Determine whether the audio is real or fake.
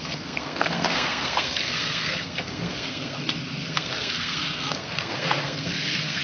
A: fake